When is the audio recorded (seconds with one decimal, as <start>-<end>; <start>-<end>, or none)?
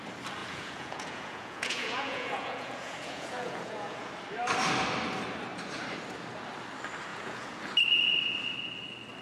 0.0-0.4; 4.1-7.1; 7.6-9.2